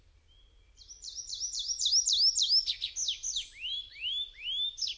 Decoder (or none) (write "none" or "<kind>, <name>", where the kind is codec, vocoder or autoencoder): none